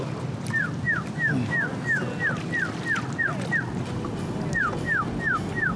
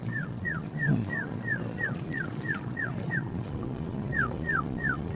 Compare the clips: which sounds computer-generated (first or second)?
second